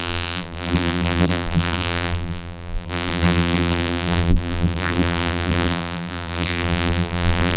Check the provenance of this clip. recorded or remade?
remade